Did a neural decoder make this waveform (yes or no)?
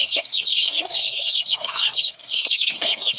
yes